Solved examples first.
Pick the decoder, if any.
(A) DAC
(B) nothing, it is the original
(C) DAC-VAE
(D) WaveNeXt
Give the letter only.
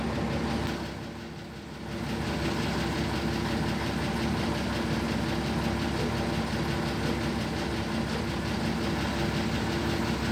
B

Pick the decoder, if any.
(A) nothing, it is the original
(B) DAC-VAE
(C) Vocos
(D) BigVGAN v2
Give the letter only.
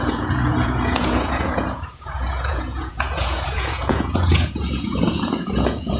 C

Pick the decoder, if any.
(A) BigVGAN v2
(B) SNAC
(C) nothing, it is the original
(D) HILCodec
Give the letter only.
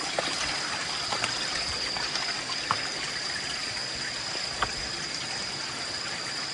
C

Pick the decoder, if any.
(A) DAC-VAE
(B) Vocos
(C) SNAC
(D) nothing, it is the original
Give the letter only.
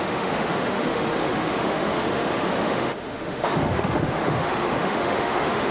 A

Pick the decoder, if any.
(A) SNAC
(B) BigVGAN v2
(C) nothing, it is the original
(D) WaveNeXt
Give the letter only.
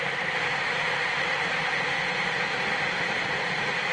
B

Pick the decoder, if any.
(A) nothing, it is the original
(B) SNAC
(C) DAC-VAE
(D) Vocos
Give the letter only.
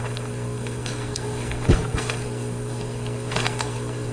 B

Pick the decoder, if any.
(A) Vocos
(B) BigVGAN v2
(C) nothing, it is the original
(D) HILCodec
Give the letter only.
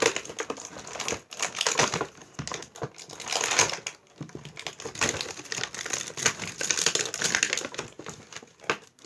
C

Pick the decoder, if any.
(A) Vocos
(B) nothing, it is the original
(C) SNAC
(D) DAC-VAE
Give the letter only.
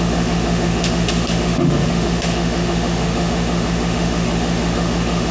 D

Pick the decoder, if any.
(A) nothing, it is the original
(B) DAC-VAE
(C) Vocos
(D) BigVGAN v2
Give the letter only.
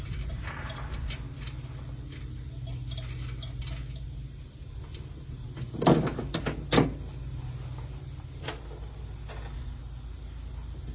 A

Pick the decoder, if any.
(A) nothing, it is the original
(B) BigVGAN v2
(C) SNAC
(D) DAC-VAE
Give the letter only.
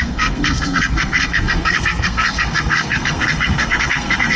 C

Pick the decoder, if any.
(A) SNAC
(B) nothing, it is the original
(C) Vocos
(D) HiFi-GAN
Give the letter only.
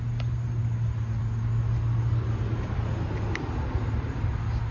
B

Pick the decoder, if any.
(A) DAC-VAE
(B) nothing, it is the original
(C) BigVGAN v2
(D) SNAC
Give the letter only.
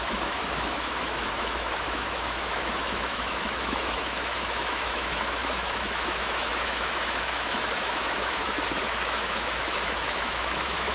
A